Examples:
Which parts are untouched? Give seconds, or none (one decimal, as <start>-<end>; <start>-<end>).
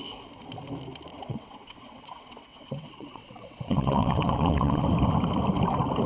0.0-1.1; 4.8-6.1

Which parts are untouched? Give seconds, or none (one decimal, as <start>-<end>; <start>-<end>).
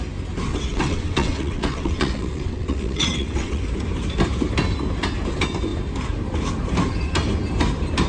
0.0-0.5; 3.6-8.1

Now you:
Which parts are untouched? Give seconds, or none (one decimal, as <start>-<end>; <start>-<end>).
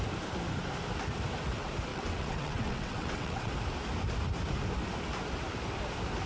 0.0-1.9; 3.5-6.3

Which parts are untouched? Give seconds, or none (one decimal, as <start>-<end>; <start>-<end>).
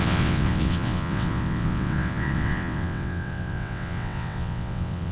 none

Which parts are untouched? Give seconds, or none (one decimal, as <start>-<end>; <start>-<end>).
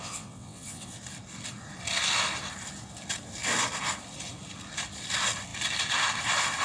1.0-6.6